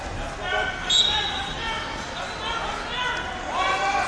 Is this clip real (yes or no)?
yes